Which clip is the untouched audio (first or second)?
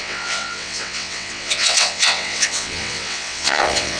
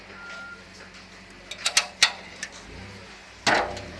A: second